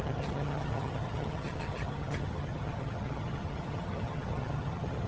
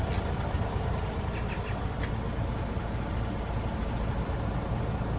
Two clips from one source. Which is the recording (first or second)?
second